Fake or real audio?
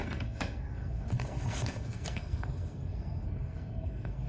fake